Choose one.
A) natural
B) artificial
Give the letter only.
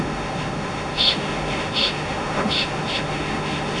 B